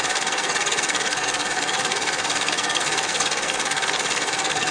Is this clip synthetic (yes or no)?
yes